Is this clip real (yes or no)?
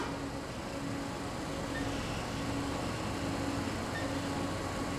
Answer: yes